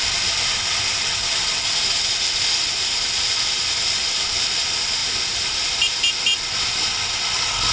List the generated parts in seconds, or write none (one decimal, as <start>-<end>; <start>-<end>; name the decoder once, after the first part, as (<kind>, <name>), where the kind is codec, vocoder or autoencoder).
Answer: none